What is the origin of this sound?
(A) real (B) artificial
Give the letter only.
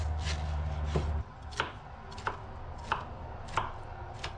A